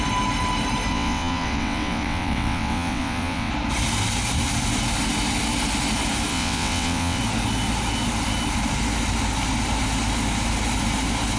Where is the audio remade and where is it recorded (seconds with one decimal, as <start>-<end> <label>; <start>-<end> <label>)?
0.0-0.9 recorded; 0.9-3.5 remade; 3.5-6.3 recorded; 6.3-7.2 remade; 7.2-11.4 recorded